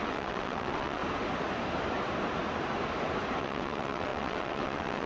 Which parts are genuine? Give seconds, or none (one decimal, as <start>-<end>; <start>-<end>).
1.0-3.4